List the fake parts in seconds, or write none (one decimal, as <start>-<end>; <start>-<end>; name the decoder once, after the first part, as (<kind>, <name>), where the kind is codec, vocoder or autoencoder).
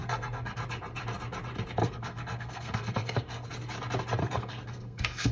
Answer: 0.0-0.6 (codec, SNAC); 1.8-3.5; 4.2-5.3